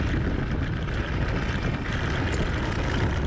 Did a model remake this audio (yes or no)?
no